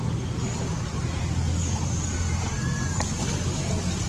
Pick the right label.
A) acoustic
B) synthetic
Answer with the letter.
A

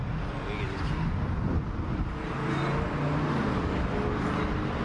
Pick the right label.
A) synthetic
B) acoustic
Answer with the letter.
B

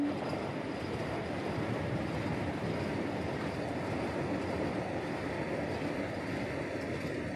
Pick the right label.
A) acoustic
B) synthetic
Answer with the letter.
A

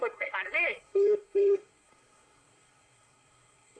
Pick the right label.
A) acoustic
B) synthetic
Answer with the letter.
B